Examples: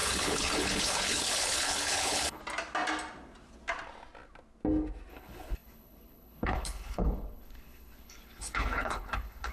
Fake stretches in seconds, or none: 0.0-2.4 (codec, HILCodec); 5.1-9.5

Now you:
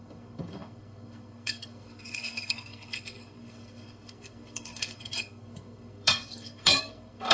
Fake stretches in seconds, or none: 0.0-7.3 (codec, SNAC)

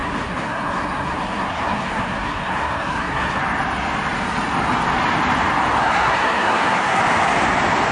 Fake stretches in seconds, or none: 0.0-3.4 (codec, SNAC); 5.8-7.0